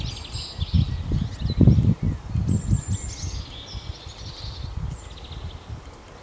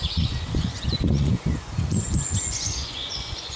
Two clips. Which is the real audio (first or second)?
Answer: first